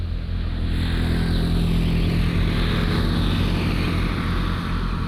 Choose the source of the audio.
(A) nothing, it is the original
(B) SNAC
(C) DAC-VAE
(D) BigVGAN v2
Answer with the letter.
A